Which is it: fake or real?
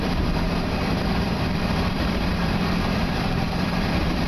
fake